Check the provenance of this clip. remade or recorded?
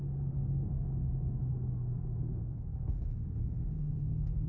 remade